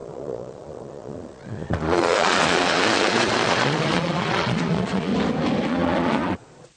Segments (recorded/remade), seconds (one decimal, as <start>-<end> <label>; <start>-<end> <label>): 0.0-5.1 remade; 5.1-5.7 recorded; 5.7-6.8 remade